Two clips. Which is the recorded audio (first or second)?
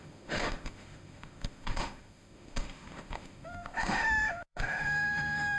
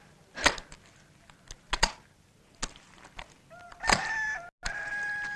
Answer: second